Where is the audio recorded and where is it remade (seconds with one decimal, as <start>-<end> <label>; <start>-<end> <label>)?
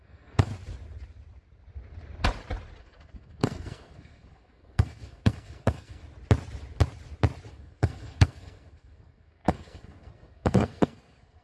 0.0-0.5 remade; 0.5-2.8 recorded; 2.8-6.0 remade; 6.0-7.5 recorded; 7.5-11.4 remade